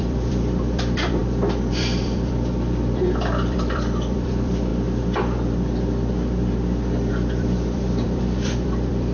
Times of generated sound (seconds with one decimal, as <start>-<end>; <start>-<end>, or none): 0.0-1.2; 1.7-4.7; 7.1-9.1